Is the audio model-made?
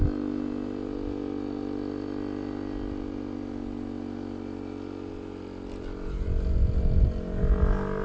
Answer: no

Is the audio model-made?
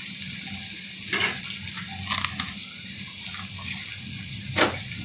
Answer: no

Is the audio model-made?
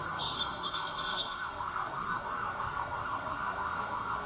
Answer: yes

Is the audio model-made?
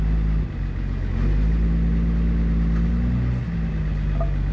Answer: no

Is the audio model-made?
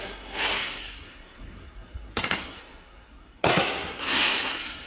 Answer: yes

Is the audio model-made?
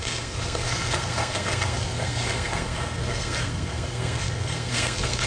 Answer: yes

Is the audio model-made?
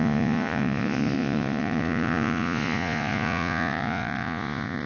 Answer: yes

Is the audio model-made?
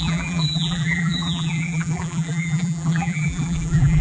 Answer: yes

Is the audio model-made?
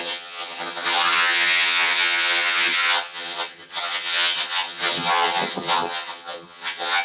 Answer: yes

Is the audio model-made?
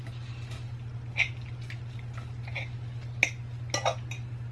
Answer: no